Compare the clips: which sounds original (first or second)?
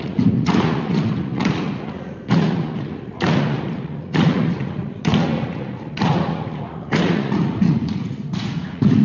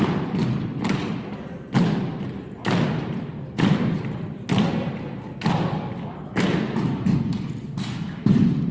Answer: second